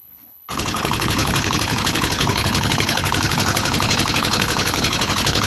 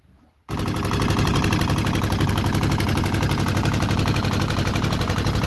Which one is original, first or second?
second